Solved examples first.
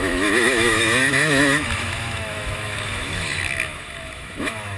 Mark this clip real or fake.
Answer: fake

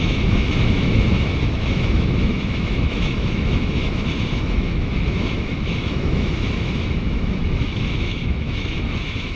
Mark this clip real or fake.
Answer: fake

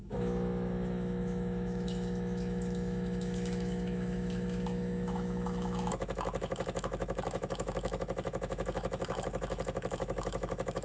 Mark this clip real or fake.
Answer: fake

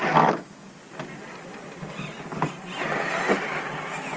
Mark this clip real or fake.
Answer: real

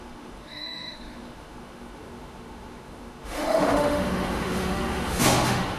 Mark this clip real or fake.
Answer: fake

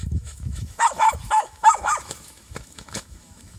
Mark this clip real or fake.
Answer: fake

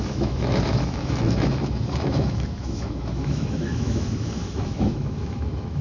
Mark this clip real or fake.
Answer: fake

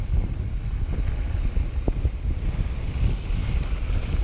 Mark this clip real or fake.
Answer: real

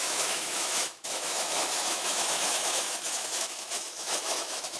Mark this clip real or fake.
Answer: fake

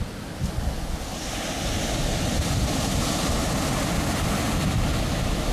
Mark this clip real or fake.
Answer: real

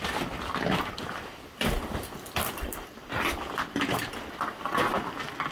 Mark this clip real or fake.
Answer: real